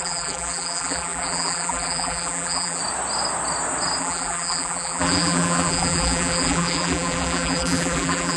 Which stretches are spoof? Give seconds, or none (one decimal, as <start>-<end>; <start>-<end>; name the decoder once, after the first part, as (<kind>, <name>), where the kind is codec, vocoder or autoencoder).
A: 0.0-2.8 (vocoder, BigVGAN v2); 4.0-8.4